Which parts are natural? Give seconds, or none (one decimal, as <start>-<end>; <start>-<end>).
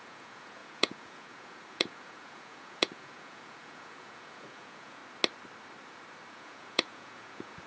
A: 5.0-6.3